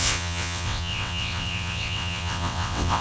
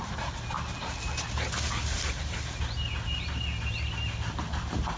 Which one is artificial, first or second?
first